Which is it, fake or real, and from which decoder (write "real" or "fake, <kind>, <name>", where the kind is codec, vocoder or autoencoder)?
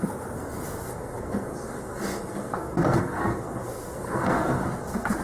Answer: fake, codec, SNAC